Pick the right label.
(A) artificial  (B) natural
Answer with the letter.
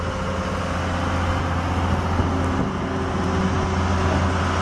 B